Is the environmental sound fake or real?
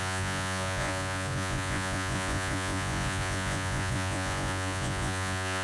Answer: fake